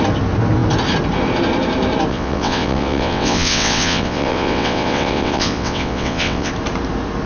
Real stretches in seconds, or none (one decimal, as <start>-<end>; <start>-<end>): 0.0-2.1; 6.5-7.3